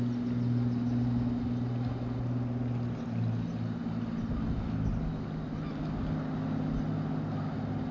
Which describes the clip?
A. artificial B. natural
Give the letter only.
B